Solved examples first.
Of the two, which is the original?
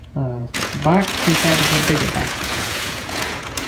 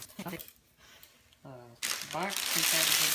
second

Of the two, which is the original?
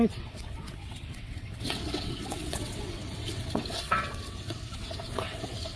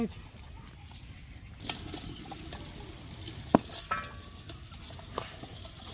second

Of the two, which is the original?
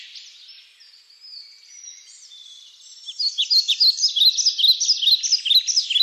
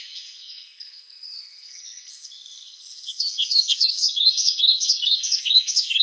first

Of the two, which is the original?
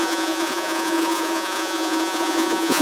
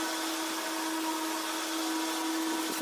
second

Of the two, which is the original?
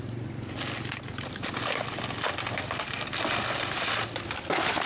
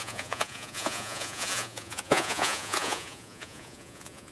first